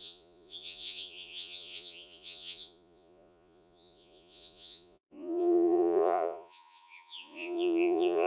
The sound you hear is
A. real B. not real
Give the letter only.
B